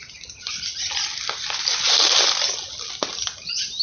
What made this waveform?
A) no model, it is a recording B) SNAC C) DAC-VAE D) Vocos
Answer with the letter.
A